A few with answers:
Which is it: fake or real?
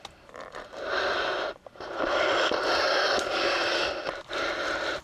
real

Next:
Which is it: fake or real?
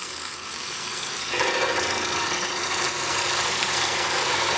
fake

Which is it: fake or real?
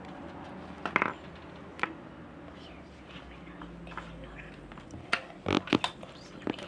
real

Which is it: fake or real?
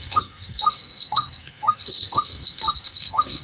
fake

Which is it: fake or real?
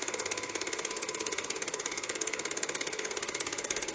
fake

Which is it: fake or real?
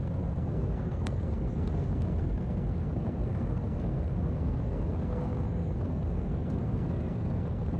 fake